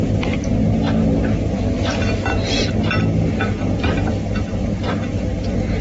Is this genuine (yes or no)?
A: yes